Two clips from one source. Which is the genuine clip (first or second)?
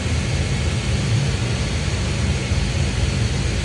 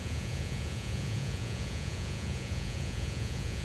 first